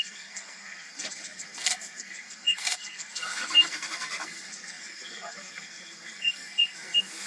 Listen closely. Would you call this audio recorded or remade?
remade